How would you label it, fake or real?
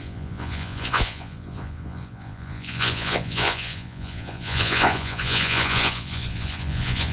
fake